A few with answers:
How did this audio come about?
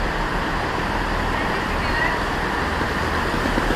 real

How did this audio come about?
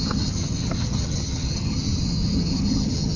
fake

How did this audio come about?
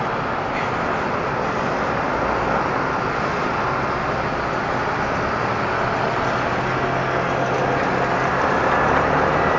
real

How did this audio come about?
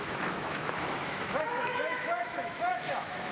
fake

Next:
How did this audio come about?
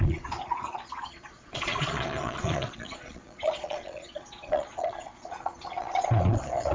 fake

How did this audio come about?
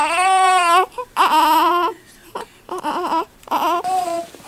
fake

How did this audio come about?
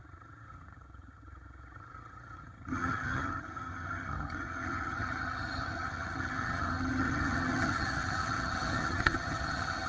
fake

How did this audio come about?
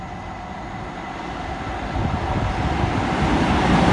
real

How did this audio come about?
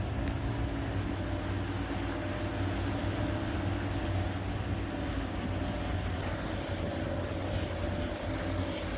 real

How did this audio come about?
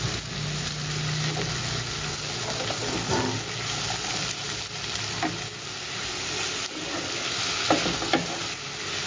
real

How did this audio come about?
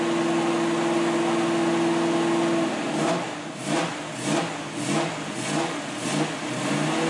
real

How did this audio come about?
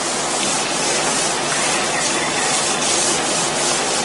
real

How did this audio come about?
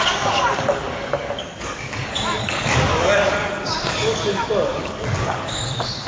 fake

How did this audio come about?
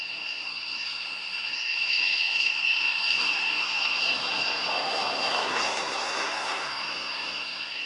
fake